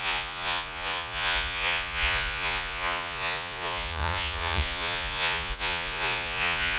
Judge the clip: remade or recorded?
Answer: remade